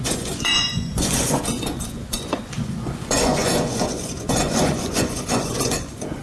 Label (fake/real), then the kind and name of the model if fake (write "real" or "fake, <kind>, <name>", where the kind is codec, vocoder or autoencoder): fake, vocoder, Vocos